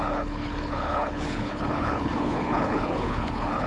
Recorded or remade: remade